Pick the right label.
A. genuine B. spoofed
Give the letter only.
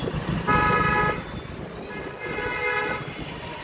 A